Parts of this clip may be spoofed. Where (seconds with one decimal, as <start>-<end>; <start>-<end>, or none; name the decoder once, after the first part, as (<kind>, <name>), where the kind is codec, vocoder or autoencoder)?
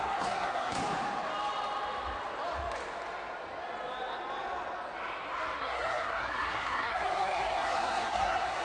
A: 0.0-0.8 (codec, SNAC); 5.6-8.6